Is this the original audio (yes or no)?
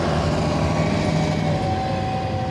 yes